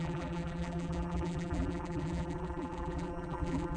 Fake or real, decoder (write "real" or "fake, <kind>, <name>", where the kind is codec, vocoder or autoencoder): fake, vocoder, BigVGAN v2